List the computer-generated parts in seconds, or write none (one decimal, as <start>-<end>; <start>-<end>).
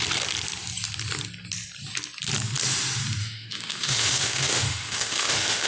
3.2-5.7